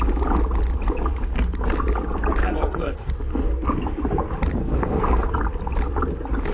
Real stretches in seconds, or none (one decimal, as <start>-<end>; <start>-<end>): 0.0-2.4; 3.1-4.6; 5.3-6.5